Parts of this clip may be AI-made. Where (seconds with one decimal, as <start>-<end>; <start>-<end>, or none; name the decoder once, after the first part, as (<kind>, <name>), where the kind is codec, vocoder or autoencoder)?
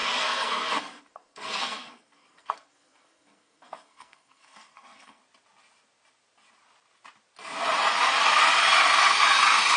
0.0-5.2 (codec, SNAC)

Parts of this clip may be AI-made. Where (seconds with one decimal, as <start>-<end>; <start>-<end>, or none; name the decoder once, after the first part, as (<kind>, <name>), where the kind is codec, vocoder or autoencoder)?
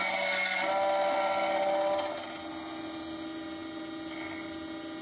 none